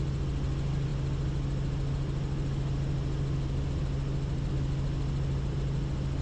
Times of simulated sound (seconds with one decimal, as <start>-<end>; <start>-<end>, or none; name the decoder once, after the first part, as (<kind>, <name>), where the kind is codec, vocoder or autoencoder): none